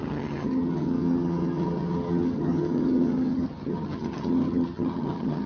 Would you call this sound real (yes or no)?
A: no